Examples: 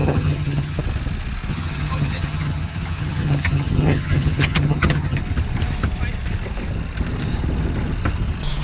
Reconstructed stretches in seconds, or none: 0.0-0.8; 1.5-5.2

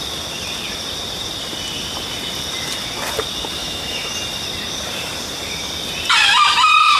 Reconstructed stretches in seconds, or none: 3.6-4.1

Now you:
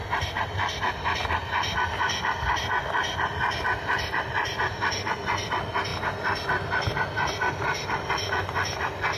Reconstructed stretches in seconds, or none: none